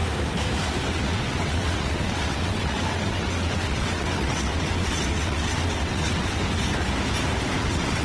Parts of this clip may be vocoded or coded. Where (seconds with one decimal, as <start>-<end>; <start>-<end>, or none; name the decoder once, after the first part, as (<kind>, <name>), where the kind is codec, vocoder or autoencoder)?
0.9-6.4 (vocoder, WaveNeXt); 7.6-8.0